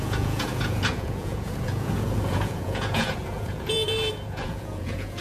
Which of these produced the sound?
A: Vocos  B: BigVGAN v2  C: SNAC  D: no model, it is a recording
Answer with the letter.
A